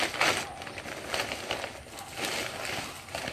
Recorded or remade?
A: recorded